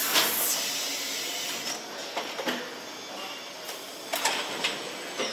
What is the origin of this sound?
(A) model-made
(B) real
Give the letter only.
B